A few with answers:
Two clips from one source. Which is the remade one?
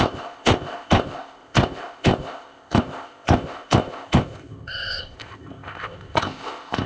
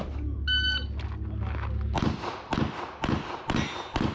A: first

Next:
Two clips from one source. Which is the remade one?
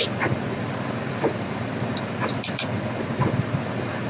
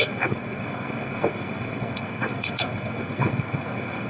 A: second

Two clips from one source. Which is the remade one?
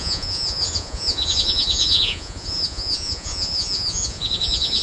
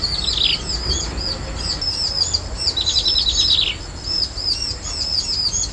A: first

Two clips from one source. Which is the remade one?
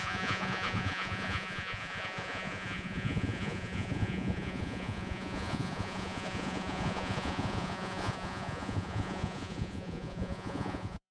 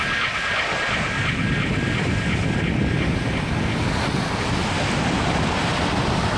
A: first